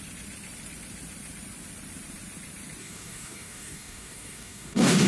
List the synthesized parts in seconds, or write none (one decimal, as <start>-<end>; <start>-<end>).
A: 2.8-5.1